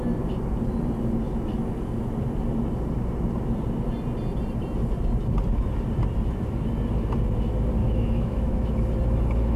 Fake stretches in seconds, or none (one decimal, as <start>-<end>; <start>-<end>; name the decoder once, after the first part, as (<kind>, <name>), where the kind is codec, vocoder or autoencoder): 7.8-8.7 (autoencoder, DAC-VAE)